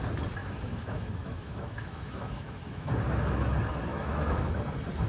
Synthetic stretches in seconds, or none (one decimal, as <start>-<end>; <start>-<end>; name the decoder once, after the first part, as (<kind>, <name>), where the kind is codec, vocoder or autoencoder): 0.4-2.9 (autoencoder, DAC-VAE); 3.9-4.5